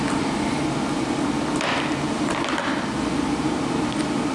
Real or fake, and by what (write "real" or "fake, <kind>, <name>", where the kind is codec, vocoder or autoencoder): real